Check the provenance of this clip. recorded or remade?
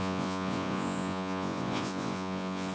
remade